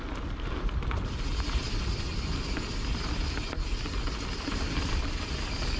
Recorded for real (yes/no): yes